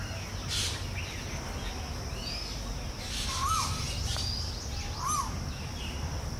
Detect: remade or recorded recorded